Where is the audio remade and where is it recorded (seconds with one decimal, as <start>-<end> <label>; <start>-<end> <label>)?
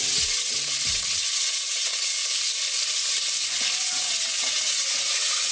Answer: 0.0-2.2 remade; 2.2-3.8 recorded; 3.8-5.5 remade